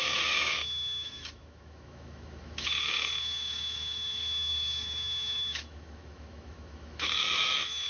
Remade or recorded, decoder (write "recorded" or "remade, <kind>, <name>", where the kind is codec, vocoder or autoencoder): remade, autoencoder, DAC-VAE